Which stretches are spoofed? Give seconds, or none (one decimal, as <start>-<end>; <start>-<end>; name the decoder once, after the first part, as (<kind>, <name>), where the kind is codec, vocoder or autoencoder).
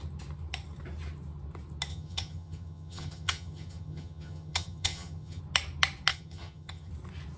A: 1.9-5.4 (vocoder, HiFi-GAN); 6.1-6.9